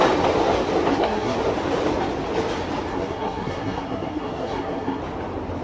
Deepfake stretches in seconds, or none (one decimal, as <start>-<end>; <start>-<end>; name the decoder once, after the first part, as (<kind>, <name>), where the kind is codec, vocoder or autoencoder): 0.9-1.4 (codec, SNAC); 2.9-5.0